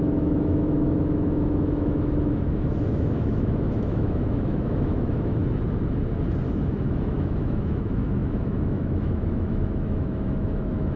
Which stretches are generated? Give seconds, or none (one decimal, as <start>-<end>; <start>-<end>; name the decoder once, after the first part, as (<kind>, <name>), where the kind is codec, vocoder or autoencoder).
0.0-5.4 (autoencoder, DAC-VAE); 6.5-11.0